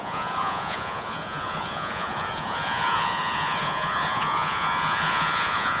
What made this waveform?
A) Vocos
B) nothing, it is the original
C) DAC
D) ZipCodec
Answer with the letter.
A